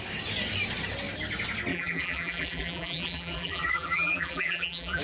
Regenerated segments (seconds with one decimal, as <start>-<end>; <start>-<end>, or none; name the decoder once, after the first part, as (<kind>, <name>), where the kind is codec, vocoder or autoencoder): 1.7-5.0 (vocoder, BigVGAN v2)